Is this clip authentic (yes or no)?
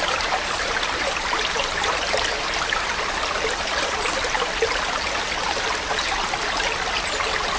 yes